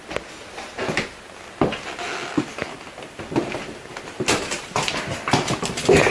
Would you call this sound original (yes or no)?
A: yes